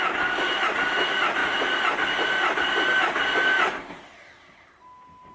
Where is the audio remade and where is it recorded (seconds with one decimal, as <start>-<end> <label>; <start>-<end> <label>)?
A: 0.0-5.3 recorded